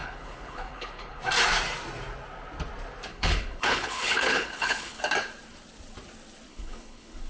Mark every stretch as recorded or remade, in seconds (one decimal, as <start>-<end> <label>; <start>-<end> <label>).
0.0-1.2 remade; 1.2-3.1 recorded; 3.1-5.0 remade; 5.0-6.5 recorded; 6.5-7.3 remade